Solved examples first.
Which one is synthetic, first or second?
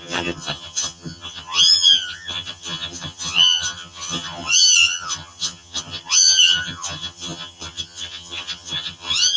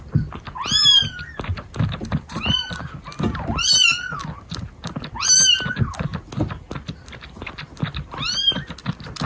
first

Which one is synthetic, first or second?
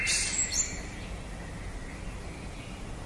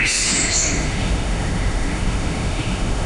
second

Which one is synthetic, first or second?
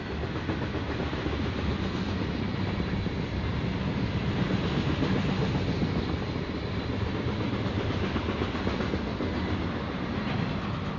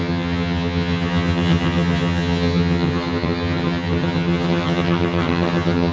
second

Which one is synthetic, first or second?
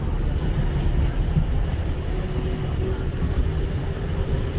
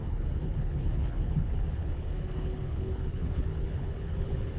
second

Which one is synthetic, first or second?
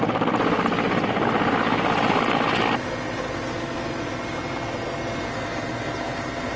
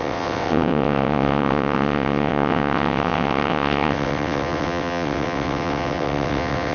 second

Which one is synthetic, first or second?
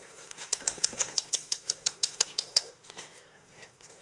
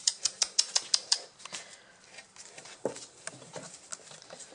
first